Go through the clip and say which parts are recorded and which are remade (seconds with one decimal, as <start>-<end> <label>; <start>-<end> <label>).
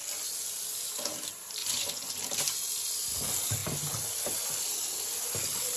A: 0.0-1.6 recorded; 1.6-2.2 remade; 2.2-5.8 recorded